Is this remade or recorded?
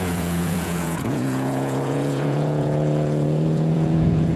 remade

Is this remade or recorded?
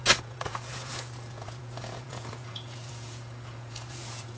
remade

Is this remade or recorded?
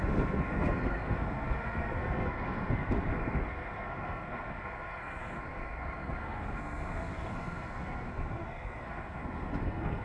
remade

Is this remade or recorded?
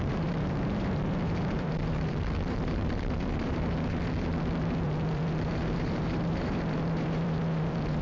remade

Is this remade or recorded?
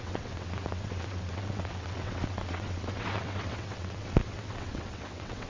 remade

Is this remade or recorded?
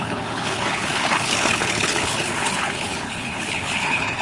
remade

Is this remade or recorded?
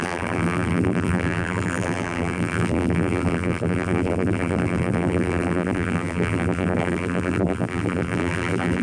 remade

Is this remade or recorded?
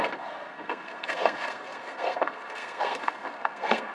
remade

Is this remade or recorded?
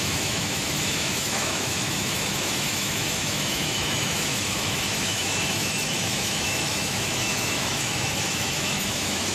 remade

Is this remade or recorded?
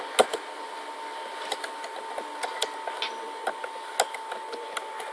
recorded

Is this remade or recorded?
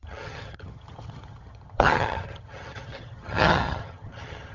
remade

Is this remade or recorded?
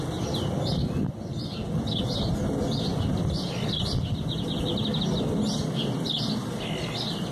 recorded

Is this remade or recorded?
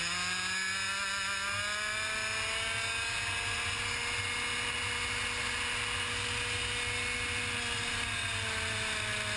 recorded